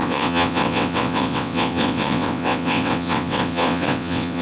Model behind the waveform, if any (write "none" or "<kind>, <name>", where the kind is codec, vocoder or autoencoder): vocoder, WaveNeXt